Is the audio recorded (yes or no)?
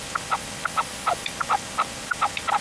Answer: no